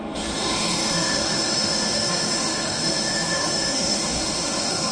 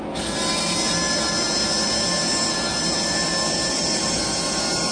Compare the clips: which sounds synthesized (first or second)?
first